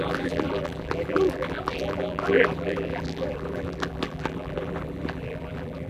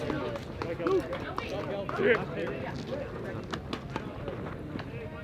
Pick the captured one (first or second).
second